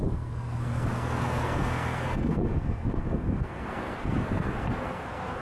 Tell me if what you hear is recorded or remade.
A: remade